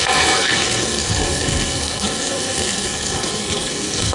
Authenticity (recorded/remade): remade